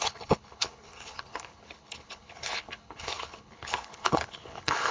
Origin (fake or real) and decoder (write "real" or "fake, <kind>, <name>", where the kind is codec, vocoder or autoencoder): fake, codec, HILCodec